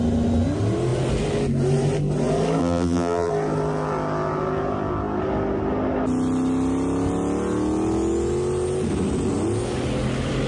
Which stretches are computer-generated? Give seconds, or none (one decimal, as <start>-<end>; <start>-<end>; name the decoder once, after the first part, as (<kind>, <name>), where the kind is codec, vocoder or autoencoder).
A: 2.6-3.3 (vocoder, BigVGAN v2)

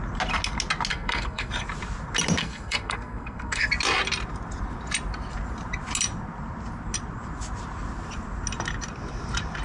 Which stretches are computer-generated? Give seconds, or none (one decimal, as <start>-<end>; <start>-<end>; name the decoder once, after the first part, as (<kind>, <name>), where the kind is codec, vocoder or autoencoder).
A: 0.9-1.5 (codec, SNAC); 2.4-3.7

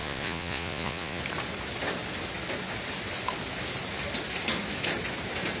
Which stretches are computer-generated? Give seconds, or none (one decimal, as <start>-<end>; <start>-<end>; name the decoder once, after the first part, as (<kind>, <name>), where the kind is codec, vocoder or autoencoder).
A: 0.0-1.2 (vocoder, Vocos)

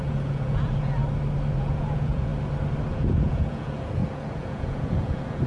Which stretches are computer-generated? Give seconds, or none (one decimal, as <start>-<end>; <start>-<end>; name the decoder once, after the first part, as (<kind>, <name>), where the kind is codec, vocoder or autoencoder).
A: 0.0-1.0 (vocoder, Vocos); 1.5-2.3; 2.9-5.5

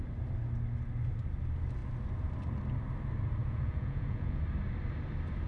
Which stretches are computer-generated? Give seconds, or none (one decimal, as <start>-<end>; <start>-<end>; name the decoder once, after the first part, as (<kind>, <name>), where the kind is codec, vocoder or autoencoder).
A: 3.4-4.4 (vocoder, Vocos)